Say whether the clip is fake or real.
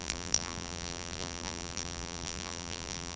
fake